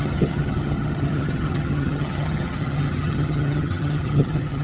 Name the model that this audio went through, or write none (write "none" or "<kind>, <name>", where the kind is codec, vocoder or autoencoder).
vocoder, HiFi-GAN